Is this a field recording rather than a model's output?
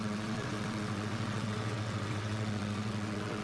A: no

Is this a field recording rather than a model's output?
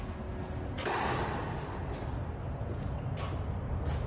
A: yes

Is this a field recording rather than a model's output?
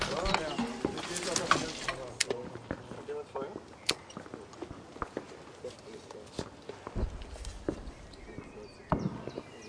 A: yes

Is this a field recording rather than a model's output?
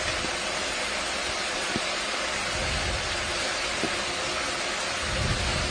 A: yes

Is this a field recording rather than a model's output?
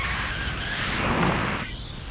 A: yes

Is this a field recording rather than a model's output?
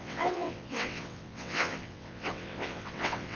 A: no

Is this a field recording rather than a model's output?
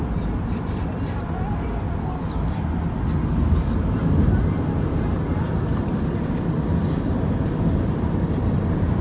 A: yes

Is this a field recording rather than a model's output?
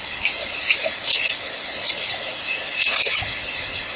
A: yes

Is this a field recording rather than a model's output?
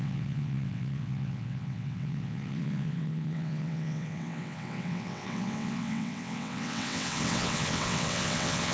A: no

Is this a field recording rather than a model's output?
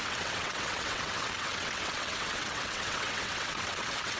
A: no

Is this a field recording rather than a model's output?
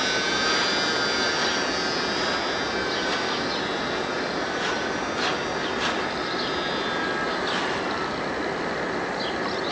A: yes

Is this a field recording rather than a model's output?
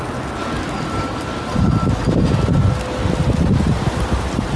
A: yes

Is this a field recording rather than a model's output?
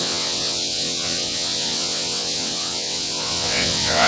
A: no